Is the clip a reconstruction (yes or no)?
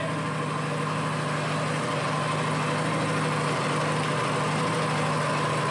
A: no